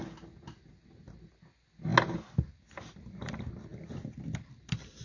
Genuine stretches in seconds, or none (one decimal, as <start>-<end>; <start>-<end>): 0.0-5.0